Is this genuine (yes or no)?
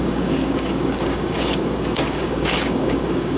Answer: no